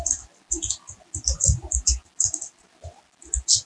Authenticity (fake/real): real